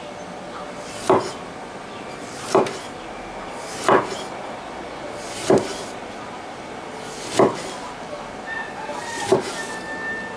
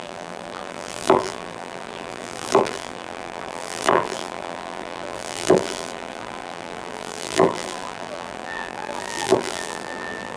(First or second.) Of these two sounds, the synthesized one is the second